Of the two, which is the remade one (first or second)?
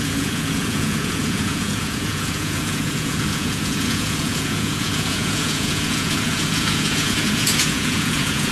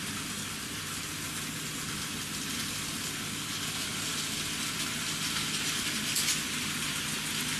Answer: first